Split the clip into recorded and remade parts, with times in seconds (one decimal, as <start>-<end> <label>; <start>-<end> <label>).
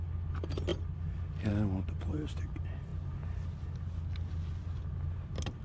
0.0-5.6 recorded